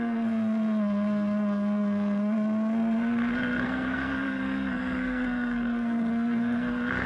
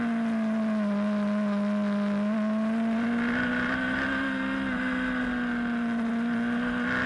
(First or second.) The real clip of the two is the second